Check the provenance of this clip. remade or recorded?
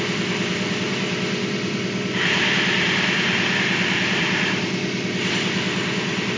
remade